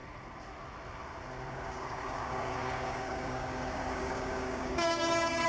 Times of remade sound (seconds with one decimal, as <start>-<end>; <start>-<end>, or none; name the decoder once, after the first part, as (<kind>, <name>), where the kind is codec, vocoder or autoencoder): 1.5-5.5 (codec, DAC)